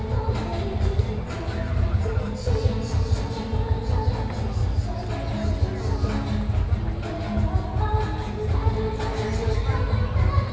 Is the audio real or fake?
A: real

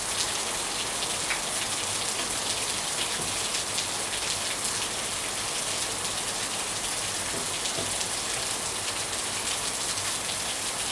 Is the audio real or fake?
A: real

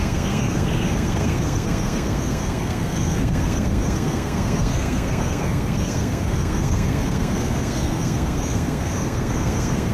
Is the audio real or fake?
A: fake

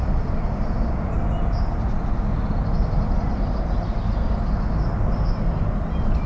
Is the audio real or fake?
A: real